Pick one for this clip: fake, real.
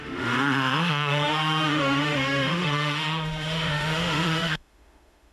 fake